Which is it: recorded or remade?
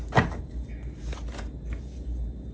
recorded